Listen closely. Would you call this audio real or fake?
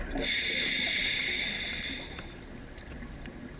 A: real